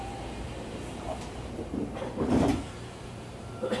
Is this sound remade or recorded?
remade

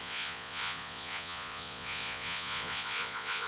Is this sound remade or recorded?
remade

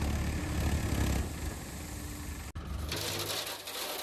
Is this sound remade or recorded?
recorded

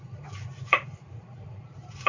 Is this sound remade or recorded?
remade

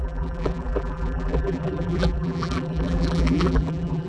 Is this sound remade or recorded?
remade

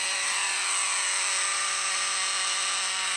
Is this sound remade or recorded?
recorded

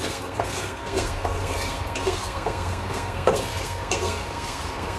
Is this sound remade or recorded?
remade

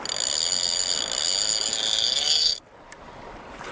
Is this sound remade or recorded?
recorded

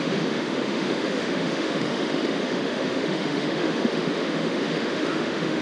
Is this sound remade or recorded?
remade